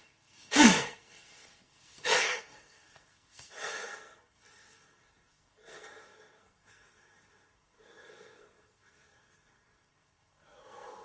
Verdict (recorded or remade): remade